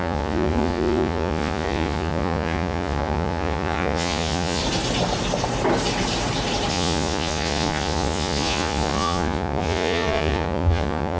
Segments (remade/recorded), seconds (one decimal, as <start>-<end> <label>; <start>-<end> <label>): 0.0-4.6 remade; 4.6-6.7 recorded; 6.7-11.2 remade